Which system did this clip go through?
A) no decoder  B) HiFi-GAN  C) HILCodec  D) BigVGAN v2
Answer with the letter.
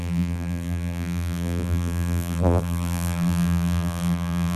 D